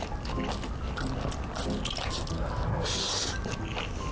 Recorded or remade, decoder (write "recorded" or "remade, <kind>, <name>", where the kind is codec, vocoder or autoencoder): recorded